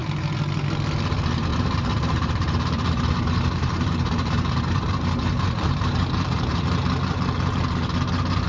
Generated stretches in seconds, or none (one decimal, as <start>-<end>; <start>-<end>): 0.0-0.5; 1.5-6.6